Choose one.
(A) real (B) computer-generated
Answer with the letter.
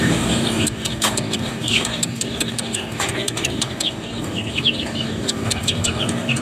B